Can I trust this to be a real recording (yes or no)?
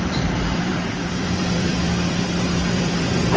no